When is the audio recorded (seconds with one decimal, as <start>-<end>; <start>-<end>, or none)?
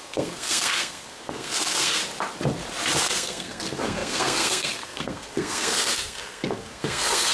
2.0-3.0